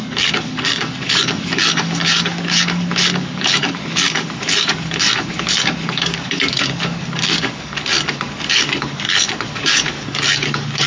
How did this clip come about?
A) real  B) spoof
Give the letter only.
B